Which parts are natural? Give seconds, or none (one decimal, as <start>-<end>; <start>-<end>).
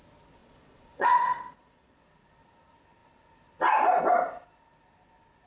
0.0-0.4; 2.0-5.5